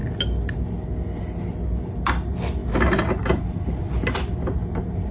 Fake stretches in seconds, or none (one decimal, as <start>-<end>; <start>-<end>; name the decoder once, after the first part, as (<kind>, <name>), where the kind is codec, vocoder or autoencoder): none

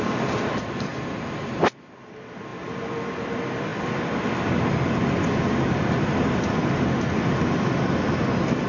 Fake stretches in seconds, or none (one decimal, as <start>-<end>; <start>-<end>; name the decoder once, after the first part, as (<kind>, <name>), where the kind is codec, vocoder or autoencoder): none

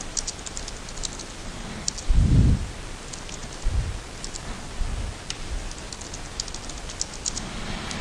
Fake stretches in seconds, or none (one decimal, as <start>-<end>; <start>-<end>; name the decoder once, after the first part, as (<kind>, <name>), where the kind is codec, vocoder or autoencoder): none

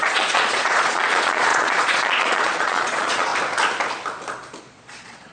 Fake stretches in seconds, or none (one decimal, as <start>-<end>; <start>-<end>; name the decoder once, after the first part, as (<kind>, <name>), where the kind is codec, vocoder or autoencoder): 0.0-3.3 (vocoder, Vocos); 4.6-5.3

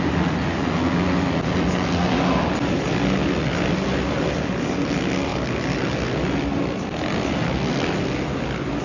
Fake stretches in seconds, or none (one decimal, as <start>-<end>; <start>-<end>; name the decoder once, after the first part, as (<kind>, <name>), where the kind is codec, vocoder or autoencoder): none

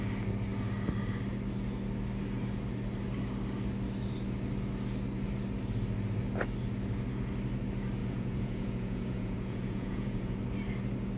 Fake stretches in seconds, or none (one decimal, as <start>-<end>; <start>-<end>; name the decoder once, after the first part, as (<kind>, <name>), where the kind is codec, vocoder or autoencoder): 8.0-10.4 (vocoder, Vocos)

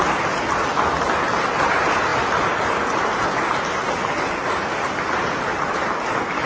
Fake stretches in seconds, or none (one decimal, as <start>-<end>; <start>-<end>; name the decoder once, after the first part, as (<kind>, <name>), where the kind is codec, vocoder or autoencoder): none